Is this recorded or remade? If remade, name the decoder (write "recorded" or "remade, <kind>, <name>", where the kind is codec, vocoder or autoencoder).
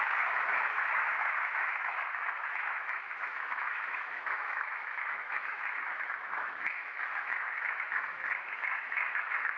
remade, autoencoder, DAC-VAE